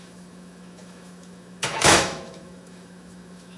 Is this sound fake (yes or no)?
yes